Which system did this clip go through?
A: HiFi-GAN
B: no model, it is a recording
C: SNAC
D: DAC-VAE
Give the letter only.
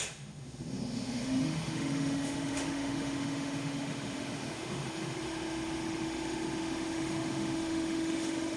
D